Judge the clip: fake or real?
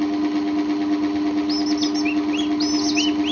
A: real